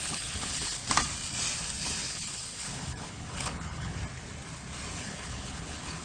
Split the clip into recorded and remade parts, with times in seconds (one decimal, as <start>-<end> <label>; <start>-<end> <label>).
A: 0.0-0.8 remade; 0.8-2.1 recorded; 2.1-4.0 remade; 4.0-4.9 recorded; 4.9-6.0 remade